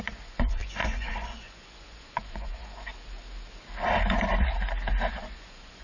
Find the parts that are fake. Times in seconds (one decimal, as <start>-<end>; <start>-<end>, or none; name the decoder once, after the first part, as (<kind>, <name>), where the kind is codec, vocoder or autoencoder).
0.0-2.9 (vocoder, Vocos); 5.1-5.8